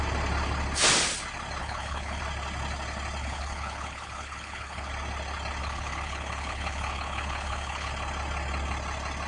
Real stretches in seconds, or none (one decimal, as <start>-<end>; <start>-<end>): 0.0-1.6; 2.2-3.2; 4.9-5.6; 7.9-9.3